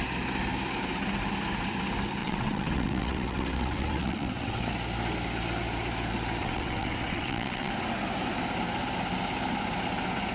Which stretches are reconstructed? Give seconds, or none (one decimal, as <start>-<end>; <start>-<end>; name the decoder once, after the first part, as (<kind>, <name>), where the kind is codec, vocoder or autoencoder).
2.2-4.6 (vocoder, WaveNeXt); 6.4-7.7